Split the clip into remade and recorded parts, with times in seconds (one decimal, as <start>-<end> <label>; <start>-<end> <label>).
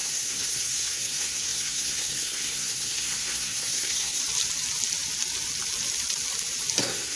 0.0-4.2 remade; 4.2-6.8 recorded; 6.8-7.2 remade